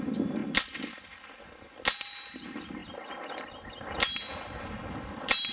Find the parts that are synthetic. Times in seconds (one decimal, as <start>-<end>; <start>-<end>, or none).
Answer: none